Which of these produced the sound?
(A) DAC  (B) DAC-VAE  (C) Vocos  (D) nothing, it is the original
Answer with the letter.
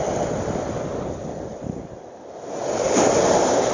D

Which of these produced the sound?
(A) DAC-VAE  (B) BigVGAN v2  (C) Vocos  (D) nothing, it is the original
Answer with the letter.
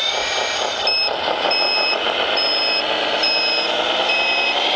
D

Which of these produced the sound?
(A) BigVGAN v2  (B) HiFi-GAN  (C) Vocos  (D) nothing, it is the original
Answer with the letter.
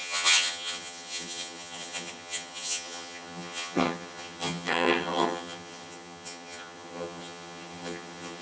B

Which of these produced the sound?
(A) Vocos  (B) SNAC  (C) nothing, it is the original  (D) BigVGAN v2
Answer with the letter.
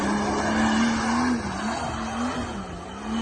C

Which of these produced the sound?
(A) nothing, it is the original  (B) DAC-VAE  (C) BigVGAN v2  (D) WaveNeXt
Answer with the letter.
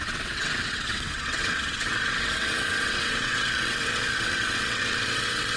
D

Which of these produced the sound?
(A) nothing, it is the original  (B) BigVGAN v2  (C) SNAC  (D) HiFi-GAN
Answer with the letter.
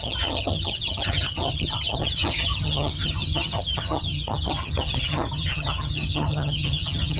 D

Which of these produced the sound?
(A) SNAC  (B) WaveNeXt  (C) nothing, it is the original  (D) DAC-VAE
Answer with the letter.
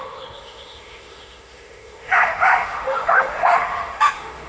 D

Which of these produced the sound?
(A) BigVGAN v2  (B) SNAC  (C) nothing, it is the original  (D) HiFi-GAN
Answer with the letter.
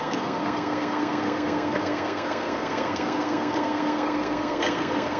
B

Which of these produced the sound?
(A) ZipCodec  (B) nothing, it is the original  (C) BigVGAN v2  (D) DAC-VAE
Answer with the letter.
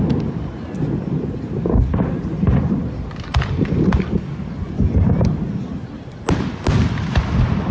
B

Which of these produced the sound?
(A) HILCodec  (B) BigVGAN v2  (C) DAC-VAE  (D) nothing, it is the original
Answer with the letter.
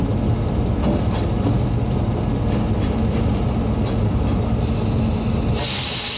D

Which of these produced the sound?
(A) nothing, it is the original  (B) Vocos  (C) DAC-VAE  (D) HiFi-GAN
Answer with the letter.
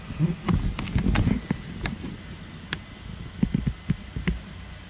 A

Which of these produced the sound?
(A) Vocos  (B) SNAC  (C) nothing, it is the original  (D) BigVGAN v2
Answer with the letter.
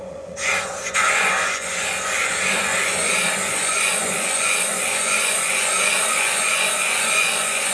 A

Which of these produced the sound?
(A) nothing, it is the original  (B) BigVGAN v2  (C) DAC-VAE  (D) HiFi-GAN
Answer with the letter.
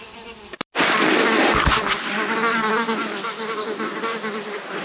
A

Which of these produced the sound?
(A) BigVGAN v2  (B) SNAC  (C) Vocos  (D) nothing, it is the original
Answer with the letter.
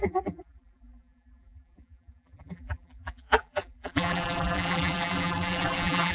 A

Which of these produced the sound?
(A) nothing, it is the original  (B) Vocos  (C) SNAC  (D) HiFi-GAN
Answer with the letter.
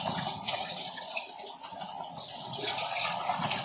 B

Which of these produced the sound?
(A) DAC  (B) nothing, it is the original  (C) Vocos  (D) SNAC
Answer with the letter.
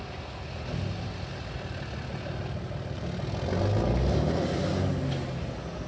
B